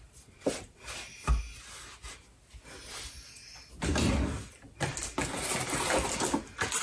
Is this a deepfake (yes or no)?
no